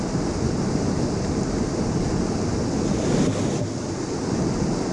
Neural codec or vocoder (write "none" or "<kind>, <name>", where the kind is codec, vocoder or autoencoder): none